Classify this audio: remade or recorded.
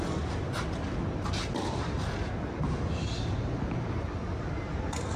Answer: recorded